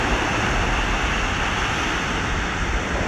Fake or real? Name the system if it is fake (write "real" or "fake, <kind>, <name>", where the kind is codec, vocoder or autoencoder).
real